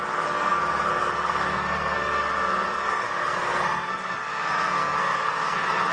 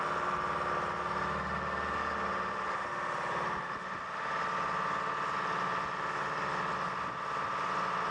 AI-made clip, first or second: first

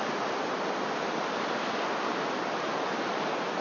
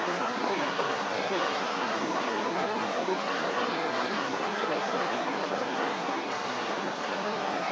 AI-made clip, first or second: second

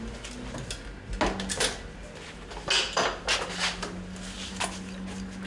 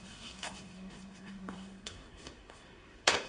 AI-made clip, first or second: second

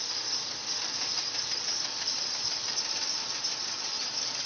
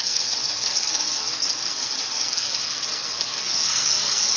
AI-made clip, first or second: second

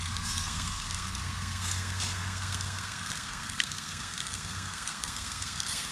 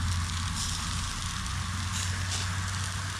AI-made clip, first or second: first